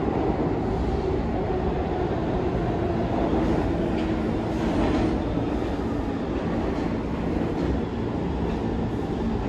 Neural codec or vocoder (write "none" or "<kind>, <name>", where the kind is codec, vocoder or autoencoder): none